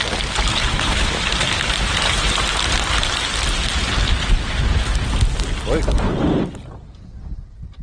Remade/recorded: recorded